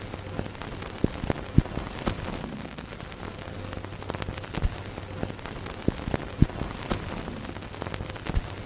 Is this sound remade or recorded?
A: recorded